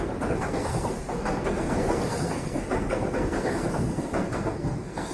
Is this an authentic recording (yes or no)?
no